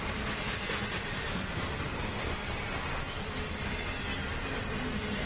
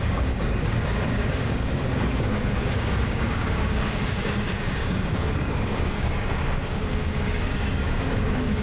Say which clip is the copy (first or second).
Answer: second